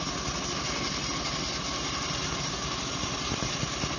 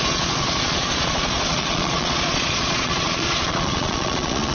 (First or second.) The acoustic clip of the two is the first